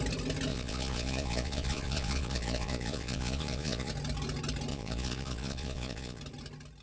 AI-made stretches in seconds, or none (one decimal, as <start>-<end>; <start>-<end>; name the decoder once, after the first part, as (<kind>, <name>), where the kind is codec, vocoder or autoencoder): 0.5-3.9 (vocoder, Vocos); 4.7-6.2